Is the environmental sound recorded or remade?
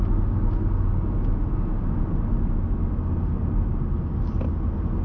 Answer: recorded